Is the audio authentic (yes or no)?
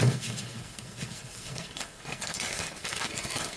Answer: no